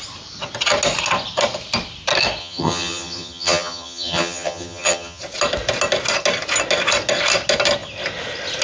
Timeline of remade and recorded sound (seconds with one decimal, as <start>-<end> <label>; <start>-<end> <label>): 0.0-2.4 recorded; 2.4-5.2 remade; 5.2-8.6 recorded